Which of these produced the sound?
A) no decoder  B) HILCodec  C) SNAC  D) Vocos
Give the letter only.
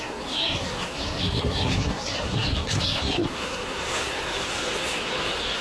C